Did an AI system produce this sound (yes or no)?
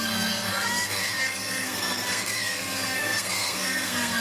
yes